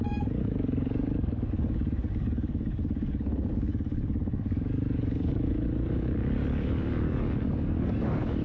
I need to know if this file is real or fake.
fake